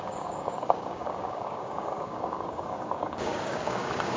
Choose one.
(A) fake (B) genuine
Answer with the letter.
A